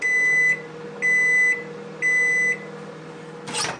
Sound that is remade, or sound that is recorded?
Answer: recorded